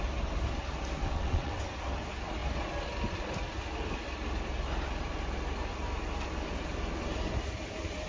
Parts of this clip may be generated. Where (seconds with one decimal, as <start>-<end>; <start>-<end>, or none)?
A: 1.0-1.6